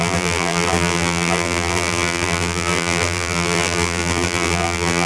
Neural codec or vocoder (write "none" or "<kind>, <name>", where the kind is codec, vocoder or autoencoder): vocoder, BigVGAN v2